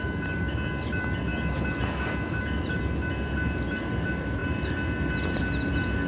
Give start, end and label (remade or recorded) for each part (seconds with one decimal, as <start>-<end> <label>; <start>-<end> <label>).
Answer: 0.0-6.1 recorded